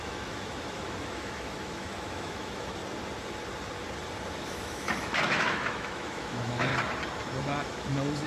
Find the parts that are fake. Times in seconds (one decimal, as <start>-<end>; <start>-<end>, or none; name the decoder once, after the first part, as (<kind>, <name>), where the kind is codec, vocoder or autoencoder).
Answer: 0.0-2.8 (autoencoder, DAC-VAE); 4.3-6.7; 7.4-8.3